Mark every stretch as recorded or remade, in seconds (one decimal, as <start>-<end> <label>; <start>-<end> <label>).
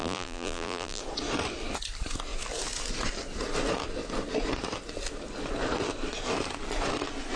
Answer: 0.0-1.0 remade; 1.0-7.4 recorded